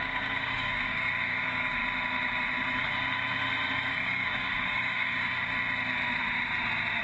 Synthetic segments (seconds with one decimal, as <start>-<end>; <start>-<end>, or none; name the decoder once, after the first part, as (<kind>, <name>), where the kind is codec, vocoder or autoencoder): 0.0-1.8 (codec, DAC); 3.9-5.5